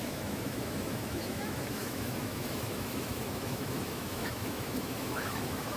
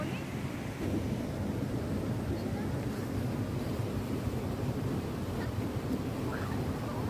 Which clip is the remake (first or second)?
first